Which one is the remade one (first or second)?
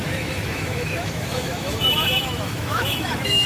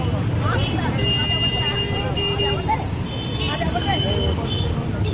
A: first